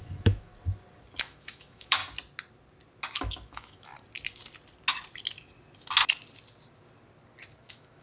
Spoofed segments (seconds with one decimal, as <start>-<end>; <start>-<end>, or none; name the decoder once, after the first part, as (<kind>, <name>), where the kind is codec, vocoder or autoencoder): 0.0-0.5 (autoencoder, DAC-VAE); 1.2-2.0; 3.2-3.9; 7.6-8.0